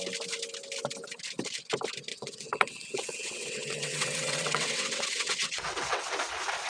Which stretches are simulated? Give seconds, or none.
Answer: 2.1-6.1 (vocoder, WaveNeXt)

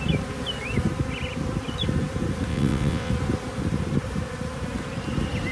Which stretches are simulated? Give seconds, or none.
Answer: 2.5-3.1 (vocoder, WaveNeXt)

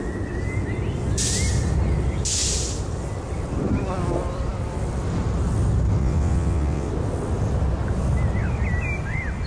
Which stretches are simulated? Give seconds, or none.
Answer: 6.0-6.9 (vocoder, WaveNeXt)

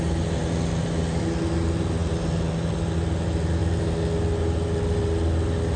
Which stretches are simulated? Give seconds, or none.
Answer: none

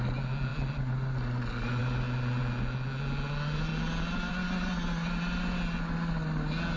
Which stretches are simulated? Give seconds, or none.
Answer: none

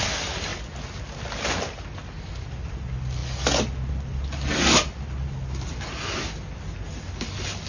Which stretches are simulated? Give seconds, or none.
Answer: none

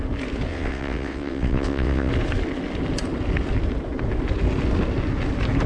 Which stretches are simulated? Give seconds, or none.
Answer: 0.5-2.1 (vocoder, WaveNeXt)

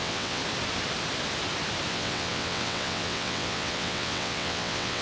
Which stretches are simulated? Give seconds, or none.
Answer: 0.0-0.4 (vocoder, WaveNeXt); 1.9-5.0